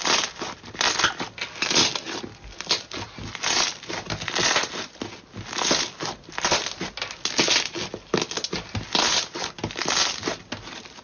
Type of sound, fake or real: real